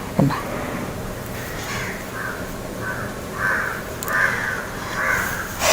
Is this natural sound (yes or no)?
yes